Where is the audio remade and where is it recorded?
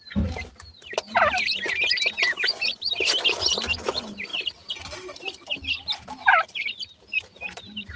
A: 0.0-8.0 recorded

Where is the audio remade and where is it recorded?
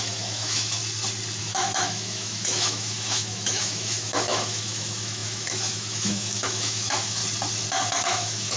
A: 0.0-0.8 remade; 0.8-1.4 recorded; 1.4-7.2 remade; 7.2-8.0 recorded; 8.0-8.6 remade